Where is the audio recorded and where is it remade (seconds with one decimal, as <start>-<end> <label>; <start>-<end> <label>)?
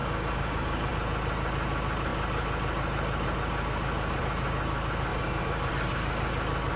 0.0-0.9 remade; 0.9-5.1 recorded; 5.1-5.7 remade; 5.7-6.8 recorded